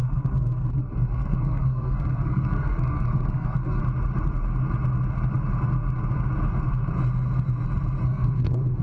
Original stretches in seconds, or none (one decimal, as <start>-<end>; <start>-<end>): 3.8-8.0